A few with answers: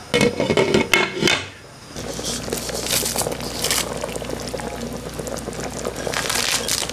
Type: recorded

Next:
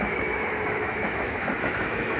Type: remade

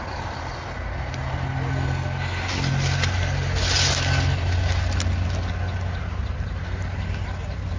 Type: recorded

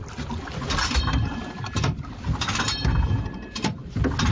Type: recorded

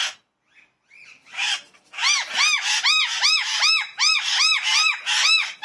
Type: recorded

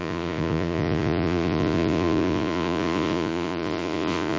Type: remade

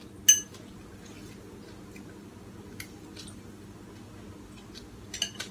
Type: recorded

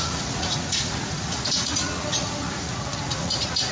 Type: remade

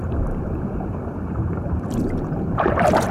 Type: remade